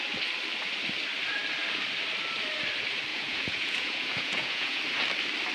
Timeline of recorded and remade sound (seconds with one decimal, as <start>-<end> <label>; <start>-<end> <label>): 0.0-3.1 recorded; 3.1-4.8 remade; 4.8-5.5 recorded